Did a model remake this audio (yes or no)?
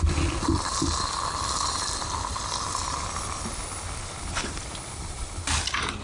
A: no